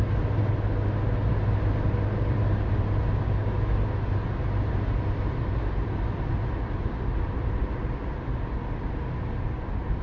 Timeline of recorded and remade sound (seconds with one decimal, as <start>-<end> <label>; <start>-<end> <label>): 0.0-10.0 recorded